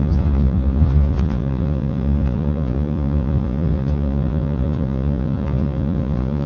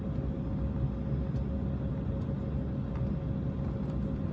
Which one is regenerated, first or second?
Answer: first